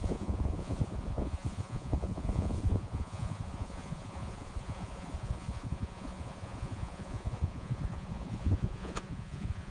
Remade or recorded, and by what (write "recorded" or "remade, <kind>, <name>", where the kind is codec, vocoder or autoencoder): remade, vocoder, Vocos